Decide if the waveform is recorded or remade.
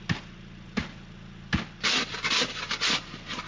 recorded